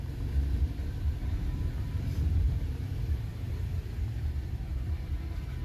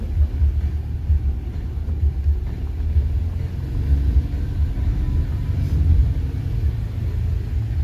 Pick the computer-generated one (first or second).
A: first